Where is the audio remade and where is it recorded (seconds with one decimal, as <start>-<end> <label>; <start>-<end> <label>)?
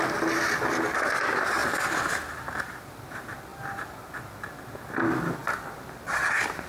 0.0-6.7 recorded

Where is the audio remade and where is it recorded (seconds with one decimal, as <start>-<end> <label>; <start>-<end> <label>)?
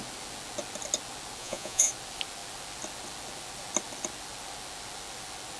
0.0-1.4 recorded; 1.4-1.9 remade; 1.9-5.6 recorded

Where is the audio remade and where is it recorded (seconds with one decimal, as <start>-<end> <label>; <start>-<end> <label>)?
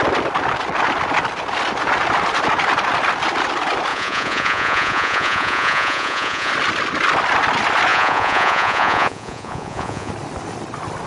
0.0-3.9 recorded; 3.9-6.5 remade; 6.5-7.9 recorded; 7.9-10.1 remade; 10.1-11.1 recorded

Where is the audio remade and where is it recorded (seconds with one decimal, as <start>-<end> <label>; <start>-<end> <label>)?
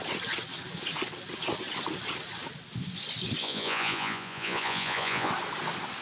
0.0-3.4 recorded; 3.4-5.3 remade; 5.3-6.0 recorded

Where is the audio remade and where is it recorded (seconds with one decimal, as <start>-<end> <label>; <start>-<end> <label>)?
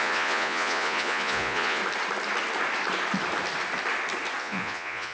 0.0-1.8 remade; 1.8-4.4 recorded; 4.4-5.1 remade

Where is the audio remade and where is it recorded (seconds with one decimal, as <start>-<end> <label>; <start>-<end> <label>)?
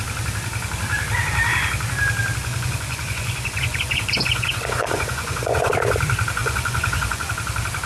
0.0-2.4 recorded; 2.4-5.7 remade; 5.7-6.4 recorded; 6.4-7.3 remade; 7.3-7.9 recorded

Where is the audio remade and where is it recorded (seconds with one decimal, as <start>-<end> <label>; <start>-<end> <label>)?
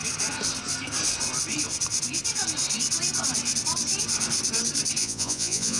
0.0-5.0 recorded; 5.0-5.8 remade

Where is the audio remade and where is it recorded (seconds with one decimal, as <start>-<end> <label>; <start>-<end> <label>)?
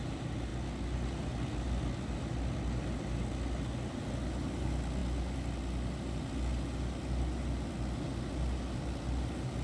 0.0-9.6 recorded